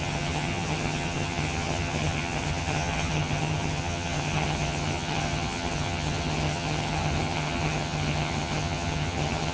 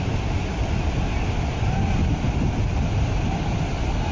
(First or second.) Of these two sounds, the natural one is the second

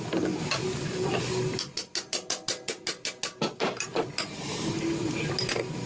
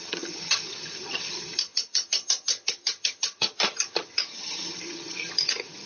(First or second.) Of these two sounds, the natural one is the first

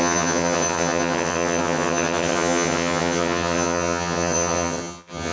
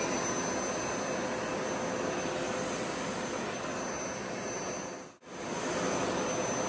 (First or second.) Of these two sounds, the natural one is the second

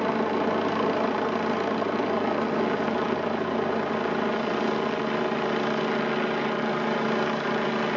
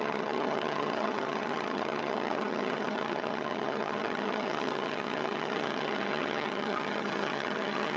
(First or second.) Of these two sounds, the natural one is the first